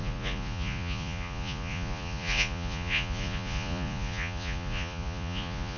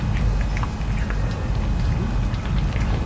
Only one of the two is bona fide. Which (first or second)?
second